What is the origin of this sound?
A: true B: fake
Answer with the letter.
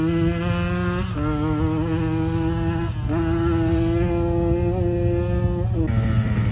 A